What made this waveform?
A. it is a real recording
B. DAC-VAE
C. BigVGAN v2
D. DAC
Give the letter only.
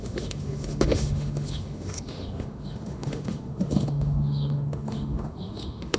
B